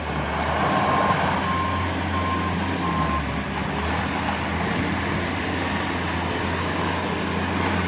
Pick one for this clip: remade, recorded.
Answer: recorded